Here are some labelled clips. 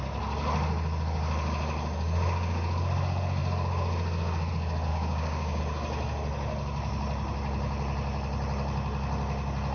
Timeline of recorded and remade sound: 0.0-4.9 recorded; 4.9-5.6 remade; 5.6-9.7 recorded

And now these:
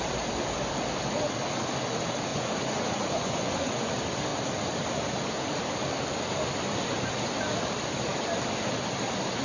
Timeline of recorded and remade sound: 0.0-2.3 recorded; 2.3-3.9 remade; 3.9-9.4 recorded

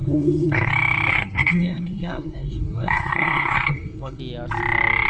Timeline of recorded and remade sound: 0.0-0.7 remade; 0.7-1.1 recorded; 1.1-4.2 remade; 4.2-5.1 recorded